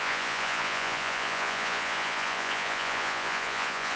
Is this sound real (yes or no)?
no